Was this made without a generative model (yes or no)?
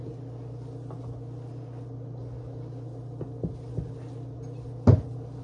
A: yes